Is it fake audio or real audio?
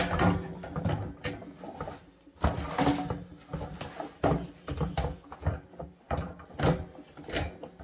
real